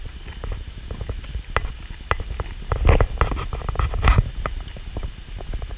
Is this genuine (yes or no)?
yes